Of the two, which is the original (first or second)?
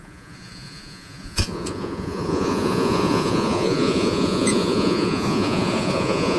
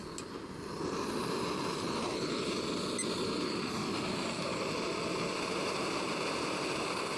second